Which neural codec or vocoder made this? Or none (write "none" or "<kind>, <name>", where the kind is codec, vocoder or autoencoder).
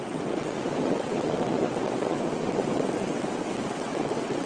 vocoder, WaveNeXt